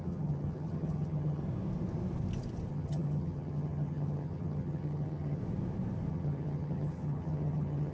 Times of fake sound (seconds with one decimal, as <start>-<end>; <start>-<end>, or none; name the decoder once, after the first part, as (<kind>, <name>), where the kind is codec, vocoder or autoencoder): 0.0-1.4 (vocoder, HiFi-GAN); 2.7-5.4; 6.1-7.9